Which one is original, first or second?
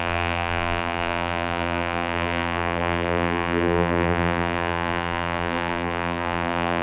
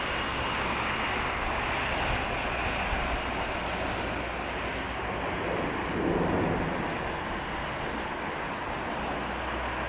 second